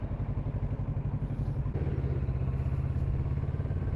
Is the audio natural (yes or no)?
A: yes